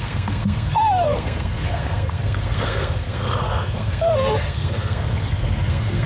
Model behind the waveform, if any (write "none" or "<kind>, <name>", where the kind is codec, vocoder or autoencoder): codec, SNAC